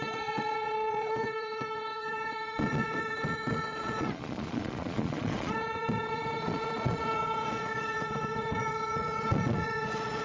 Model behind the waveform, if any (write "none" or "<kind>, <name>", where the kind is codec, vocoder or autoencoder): vocoder, Vocos